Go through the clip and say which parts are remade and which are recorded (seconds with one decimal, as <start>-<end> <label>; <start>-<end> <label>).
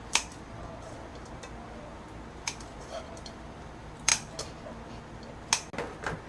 0.0-1.1 remade; 1.1-2.3 recorded; 2.3-4.1 remade; 4.1-6.3 recorded